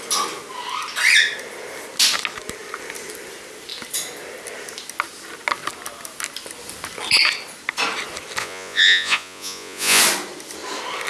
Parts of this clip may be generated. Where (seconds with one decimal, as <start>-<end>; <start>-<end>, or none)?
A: 8.4-10.0